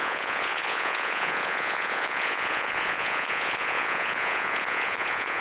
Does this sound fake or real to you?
fake